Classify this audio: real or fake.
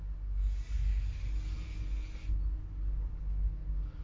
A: real